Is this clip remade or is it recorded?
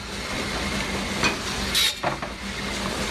recorded